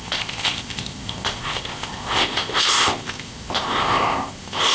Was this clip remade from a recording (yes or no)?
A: yes